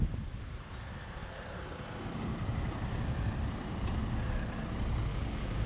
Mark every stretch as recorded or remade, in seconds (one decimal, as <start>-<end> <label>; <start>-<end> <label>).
0.0-5.1 recorded; 5.1-5.7 remade